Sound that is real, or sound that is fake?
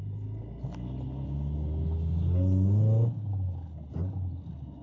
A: real